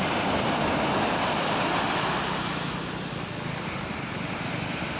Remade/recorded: recorded